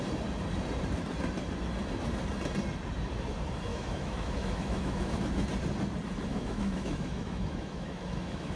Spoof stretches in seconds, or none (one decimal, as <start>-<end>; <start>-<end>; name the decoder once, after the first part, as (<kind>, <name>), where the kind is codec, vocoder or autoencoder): 3.7-5.2 (autoencoder, DAC-VAE); 6.3-8.6